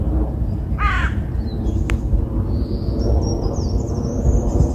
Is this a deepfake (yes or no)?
no